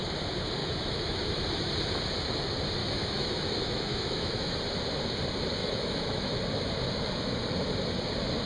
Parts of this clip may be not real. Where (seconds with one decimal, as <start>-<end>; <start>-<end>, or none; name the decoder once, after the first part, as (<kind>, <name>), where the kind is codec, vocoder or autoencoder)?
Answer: 0.6-1.2 (autoencoder, DAC-VAE); 2.8-4.6; 5.6-6.4